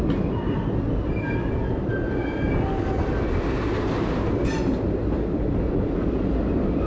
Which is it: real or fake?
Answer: real